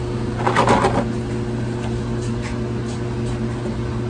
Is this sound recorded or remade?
recorded